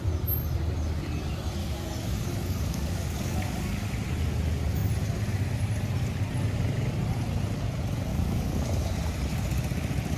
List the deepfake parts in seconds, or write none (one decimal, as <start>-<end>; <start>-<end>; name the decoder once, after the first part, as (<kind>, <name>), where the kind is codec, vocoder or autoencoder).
1.6-3.9 (codec, DAC); 8.1-8.8